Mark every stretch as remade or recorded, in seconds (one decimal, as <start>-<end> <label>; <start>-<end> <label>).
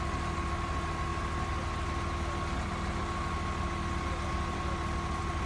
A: 0.0-5.5 recorded